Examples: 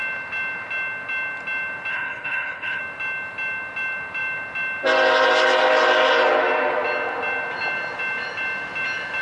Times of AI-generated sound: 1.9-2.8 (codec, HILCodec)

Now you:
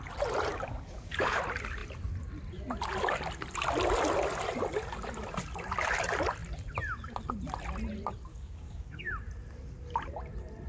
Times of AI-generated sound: 0.5-1.4 (codec, DAC); 8.3-9.1

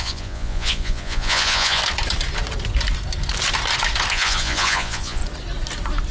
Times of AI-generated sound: 0.0-1.8 (vocoder, Vocos); 4.1-5.2

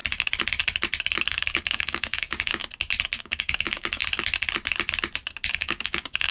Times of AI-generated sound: 1.3-2.6 (codec, DAC); 3.2-4.0; 5.5-6.3

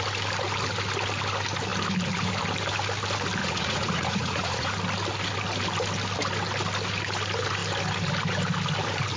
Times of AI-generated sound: 3.4-4.7 (vocoder, Vocos)

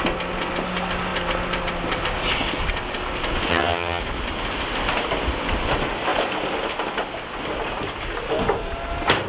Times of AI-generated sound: 3.5-4.0 (vocoder, HiFi-GAN)